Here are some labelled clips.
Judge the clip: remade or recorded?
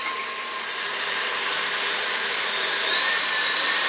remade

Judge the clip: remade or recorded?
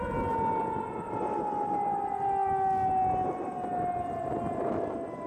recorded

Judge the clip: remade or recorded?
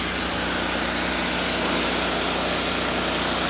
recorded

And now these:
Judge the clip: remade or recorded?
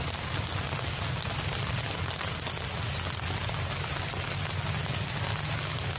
recorded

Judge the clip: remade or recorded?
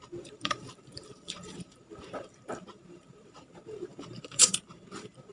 remade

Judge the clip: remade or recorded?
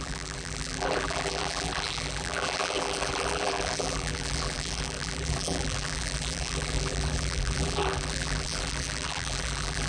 remade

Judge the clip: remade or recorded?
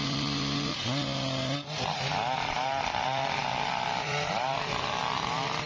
recorded